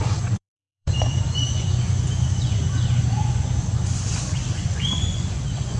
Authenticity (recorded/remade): remade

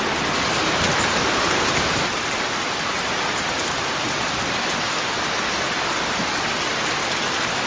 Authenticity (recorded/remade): recorded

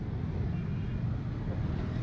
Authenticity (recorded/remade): recorded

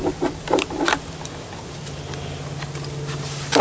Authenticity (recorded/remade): recorded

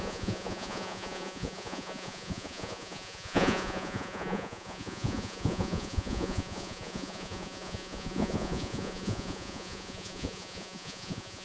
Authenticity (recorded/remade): remade